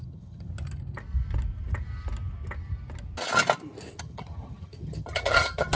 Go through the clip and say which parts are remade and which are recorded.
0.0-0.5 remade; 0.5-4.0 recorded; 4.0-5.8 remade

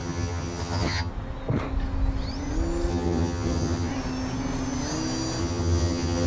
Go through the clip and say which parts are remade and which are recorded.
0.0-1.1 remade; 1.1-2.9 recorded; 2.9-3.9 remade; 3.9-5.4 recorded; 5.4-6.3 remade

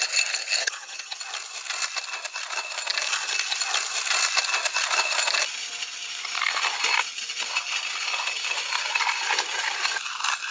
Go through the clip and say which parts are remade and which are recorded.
0.0-0.6 recorded; 0.6-1.2 remade; 1.2-10.5 recorded

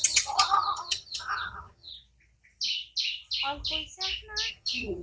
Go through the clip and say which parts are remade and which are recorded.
0.0-1.9 remade; 1.9-4.5 recorded; 4.5-5.0 remade